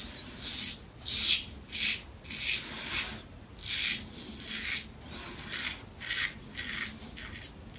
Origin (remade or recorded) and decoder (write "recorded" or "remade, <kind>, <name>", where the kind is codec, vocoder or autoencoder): recorded